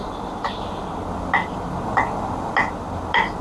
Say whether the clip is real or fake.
real